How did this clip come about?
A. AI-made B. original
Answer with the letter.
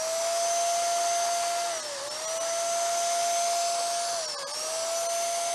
B